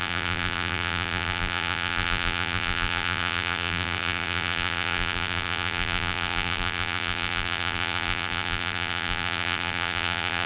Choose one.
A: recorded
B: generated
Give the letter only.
B